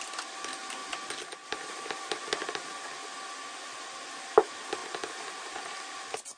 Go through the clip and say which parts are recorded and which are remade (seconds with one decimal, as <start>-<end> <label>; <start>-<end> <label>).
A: 0.0-4.8 recorded; 4.8-5.7 remade; 5.7-6.4 recorded